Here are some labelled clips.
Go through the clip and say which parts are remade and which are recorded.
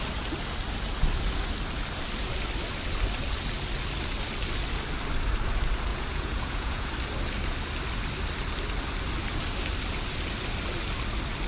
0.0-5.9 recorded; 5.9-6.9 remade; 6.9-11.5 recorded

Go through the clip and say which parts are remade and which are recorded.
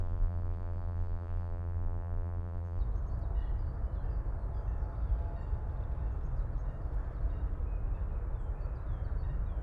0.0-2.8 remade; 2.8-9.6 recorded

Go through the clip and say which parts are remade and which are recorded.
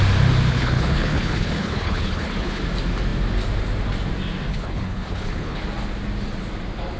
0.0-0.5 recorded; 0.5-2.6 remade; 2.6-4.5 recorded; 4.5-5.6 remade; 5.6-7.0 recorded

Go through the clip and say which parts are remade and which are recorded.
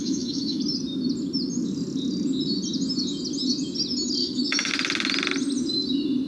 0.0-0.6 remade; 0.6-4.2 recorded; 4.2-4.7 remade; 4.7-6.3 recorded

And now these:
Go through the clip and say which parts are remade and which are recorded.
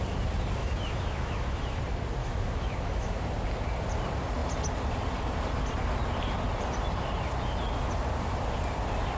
0.0-0.6 recorded; 0.6-1.8 remade; 1.8-2.2 recorded; 2.2-3.2 remade; 3.2-9.2 recorded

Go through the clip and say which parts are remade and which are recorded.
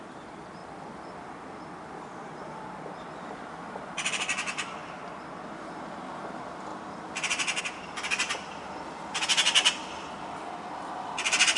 0.0-11.6 recorded